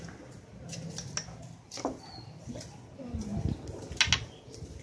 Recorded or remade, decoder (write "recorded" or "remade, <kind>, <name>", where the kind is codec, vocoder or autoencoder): recorded